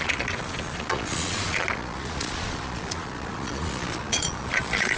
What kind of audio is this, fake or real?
fake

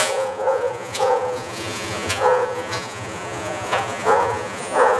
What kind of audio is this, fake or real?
fake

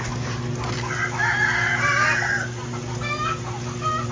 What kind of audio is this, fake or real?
real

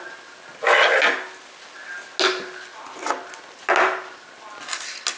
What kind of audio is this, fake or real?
real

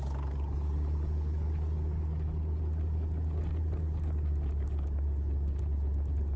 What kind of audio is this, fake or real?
real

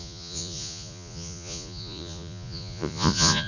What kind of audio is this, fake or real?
fake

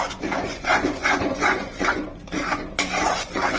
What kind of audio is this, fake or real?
fake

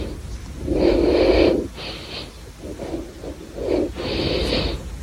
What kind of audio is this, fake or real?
real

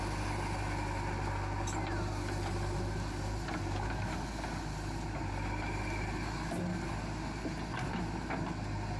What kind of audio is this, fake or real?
real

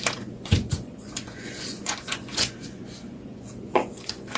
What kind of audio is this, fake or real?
fake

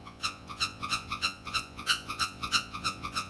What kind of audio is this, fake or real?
fake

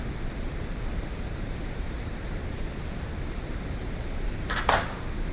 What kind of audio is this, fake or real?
real